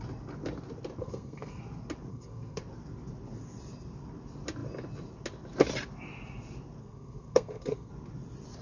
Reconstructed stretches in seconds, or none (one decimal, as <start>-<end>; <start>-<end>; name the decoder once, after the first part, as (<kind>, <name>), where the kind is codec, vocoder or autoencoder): 1.0-1.6 (codec, SNAC); 2.1-2.6; 6.8-7.9